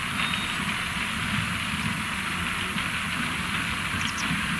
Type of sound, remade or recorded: recorded